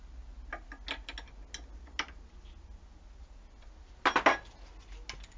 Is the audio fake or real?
real